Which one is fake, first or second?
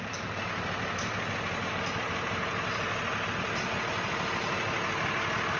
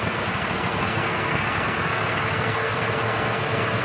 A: second